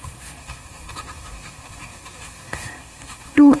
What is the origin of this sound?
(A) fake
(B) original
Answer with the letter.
A